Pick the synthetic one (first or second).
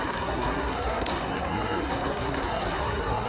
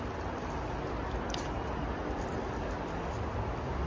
first